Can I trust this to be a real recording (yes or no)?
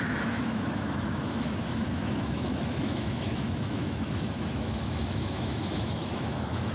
no